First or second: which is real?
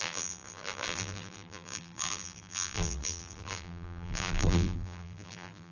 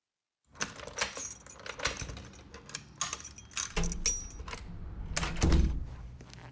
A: second